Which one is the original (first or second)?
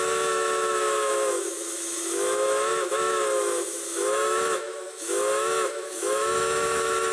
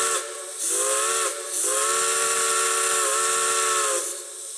second